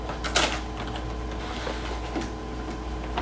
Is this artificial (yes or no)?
no